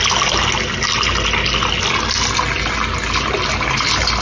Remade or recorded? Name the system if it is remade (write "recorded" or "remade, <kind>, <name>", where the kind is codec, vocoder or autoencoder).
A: recorded